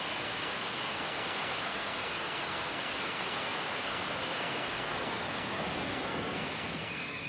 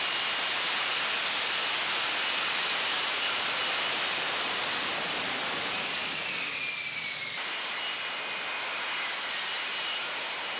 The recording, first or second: second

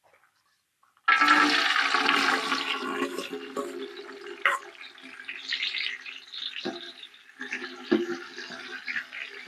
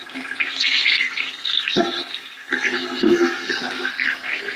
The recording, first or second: first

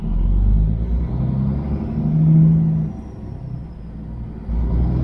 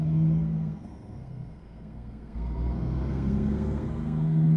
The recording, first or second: first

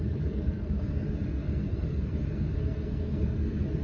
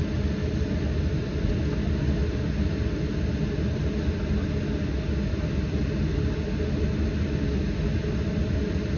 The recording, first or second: second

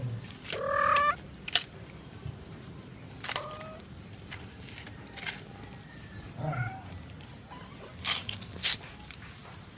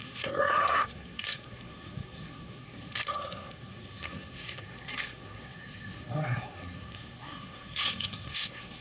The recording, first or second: first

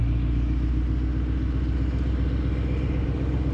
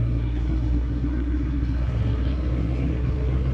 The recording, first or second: first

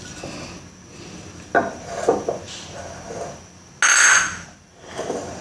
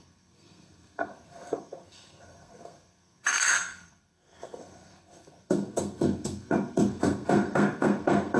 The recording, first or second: first